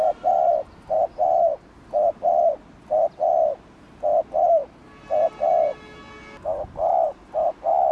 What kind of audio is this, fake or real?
real